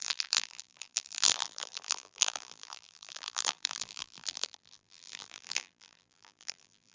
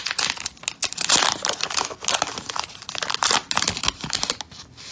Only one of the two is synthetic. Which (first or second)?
first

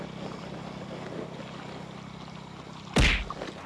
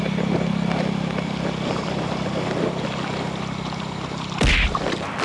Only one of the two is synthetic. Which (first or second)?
second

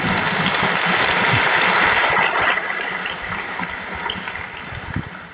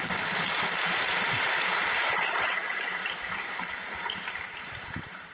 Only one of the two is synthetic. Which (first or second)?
second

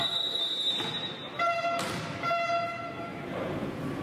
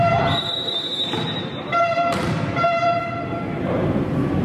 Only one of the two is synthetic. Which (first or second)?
second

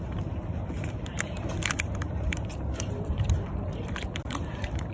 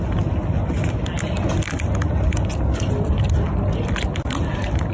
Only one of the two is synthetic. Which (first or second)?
first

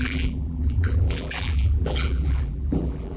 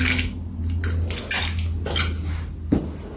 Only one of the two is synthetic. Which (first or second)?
first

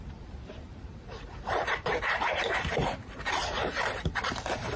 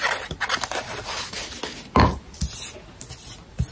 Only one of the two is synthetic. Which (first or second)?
first